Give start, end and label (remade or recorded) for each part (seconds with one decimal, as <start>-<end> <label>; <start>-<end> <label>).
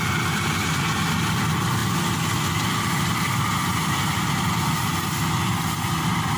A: 0.0-6.4 recorded